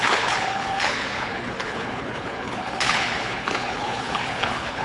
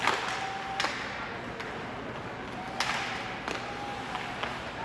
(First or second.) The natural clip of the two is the second